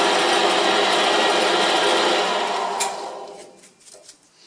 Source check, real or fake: real